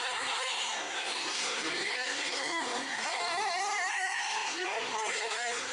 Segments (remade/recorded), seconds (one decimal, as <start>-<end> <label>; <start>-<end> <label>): 0.0-3.2 remade; 3.2-3.9 recorded; 3.9-5.7 remade